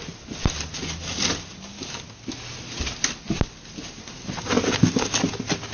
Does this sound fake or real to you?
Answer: real